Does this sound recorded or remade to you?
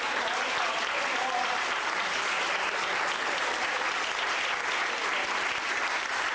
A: recorded